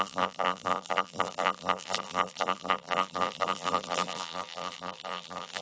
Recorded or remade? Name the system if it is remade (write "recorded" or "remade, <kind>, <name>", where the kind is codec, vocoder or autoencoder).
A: remade, vocoder, BigVGAN v2